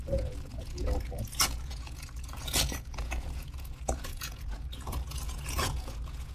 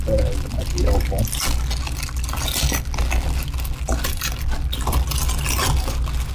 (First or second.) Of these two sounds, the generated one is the first